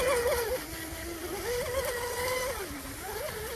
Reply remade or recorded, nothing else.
recorded